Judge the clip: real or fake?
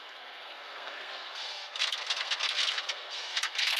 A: fake